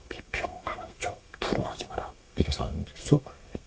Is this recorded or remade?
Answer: remade